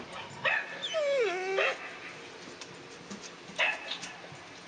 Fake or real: real